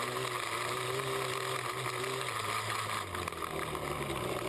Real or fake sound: real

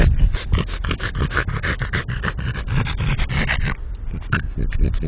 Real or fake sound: real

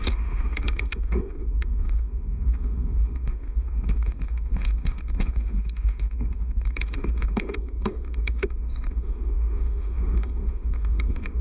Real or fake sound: fake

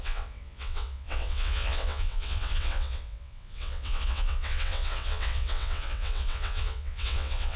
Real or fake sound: fake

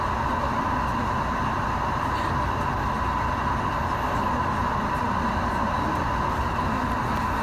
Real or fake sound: real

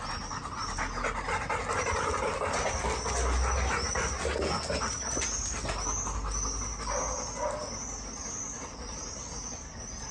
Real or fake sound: real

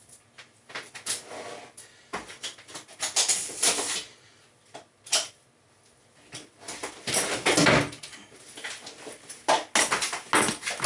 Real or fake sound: real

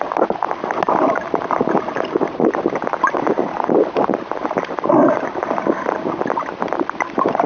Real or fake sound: real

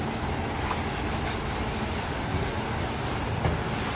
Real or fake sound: real